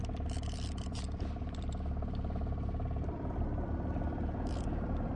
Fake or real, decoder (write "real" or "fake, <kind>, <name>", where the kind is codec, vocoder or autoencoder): fake, vocoder, BigVGAN v2